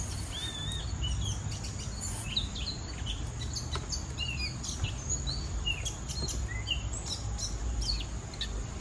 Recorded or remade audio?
recorded